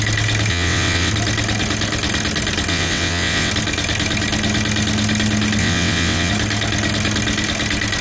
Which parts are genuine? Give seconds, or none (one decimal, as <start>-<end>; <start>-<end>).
0.0-0.5; 1.1-2.7; 3.5-5.6; 6.3-8.0